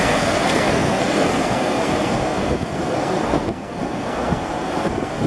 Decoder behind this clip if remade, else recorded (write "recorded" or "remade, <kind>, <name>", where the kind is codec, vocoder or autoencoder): remade, codec, SNAC